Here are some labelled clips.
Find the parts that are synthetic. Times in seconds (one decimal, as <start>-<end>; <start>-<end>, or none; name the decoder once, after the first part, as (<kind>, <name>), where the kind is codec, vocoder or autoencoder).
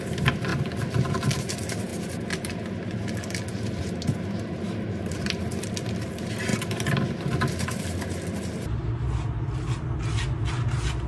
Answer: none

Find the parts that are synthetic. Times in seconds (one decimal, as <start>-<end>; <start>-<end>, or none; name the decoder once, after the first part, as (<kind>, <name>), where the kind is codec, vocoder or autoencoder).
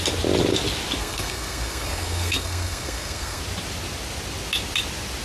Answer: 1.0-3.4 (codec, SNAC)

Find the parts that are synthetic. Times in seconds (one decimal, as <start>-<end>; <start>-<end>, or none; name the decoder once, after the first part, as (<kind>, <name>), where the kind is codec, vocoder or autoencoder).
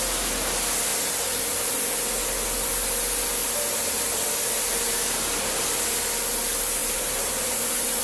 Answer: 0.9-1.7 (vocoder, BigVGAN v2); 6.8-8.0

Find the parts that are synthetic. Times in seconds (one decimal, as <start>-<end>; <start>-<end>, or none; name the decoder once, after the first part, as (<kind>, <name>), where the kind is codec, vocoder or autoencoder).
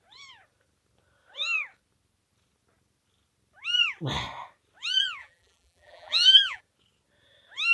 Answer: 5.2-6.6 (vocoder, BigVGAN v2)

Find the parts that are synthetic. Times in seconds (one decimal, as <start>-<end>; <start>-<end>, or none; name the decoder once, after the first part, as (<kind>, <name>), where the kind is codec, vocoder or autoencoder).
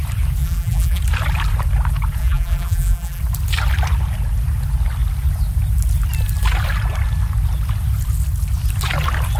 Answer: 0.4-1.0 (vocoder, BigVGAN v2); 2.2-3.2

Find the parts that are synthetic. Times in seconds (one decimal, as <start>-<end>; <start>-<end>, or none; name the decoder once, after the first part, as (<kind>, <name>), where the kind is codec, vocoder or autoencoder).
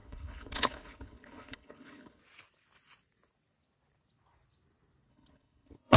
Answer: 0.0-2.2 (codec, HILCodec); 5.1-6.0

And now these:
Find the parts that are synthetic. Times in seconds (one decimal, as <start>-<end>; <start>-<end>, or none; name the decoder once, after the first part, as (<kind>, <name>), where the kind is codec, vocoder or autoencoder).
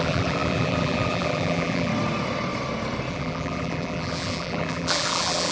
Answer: 0.0-1.9 (vocoder, BigVGAN v2); 3.1-5.5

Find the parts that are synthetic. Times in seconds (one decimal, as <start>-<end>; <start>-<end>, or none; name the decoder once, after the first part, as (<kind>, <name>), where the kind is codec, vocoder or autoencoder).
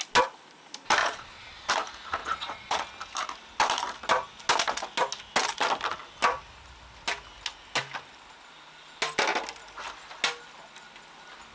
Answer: 1.0-1.7 (vocoder, Vocos); 2.2-2.8